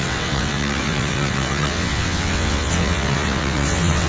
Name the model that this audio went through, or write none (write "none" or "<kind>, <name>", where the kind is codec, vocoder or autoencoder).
vocoder, WaveNeXt